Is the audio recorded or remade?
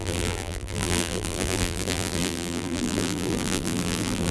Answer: remade